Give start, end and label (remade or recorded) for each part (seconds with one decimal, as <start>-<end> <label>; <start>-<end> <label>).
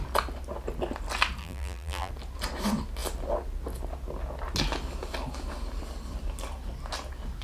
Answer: 0.0-1.4 recorded; 1.4-2.1 remade; 2.1-7.4 recorded